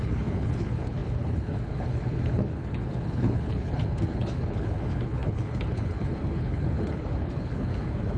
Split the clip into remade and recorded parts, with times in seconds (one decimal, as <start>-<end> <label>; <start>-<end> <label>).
0.0-8.2 remade